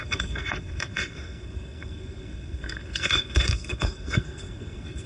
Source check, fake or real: fake